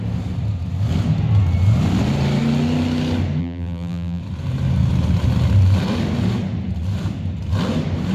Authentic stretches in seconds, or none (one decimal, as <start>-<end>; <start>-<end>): 0.0-3.4; 4.2-8.1